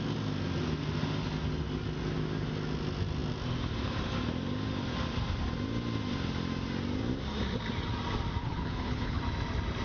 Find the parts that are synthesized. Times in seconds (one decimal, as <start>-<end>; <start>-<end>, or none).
8.4-9.2